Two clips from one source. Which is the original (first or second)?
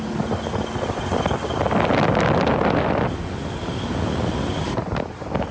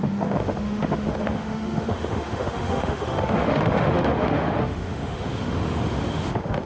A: first